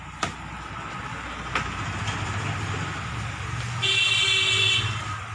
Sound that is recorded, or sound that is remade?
recorded